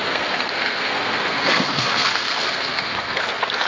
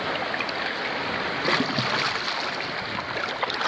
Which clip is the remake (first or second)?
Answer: first